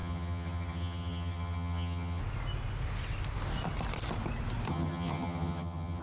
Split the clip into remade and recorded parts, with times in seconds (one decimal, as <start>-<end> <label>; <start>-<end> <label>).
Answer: 0.0-2.2 remade; 2.2-4.7 recorded; 4.7-6.0 remade